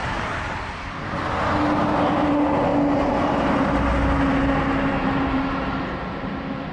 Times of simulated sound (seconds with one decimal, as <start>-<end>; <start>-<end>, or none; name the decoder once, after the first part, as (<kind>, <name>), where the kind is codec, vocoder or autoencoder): none